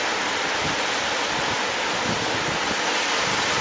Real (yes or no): yes